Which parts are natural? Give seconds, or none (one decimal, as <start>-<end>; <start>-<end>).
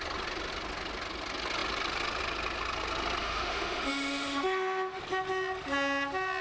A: 0.0-3.2; 5.0-6.4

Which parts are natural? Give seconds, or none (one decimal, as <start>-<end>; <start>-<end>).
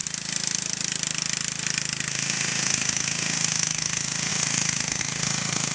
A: 0.0-2.1